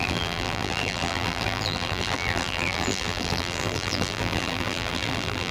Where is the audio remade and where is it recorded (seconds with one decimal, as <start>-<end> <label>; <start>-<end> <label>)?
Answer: 0.0-5.5 remade

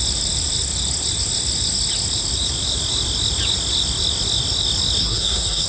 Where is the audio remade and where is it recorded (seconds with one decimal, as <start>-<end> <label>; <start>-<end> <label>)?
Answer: 0.0-5.0 recorded; 5.0-5.7 remade

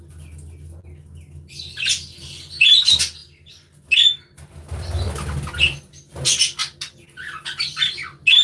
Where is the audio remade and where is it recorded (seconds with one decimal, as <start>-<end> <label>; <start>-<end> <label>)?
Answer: 0.0-8.4 recorded

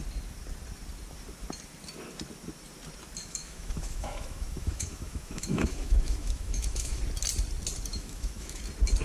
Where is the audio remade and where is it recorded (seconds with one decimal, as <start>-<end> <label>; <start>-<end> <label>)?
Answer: 0.0-3.2 recorded; 3.2-7.0 remade; 7.0-7.9 recorded; 7.9-8.6 remade; 8.6-9.0 recorded